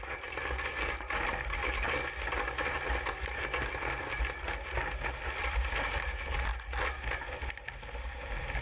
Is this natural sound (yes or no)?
yes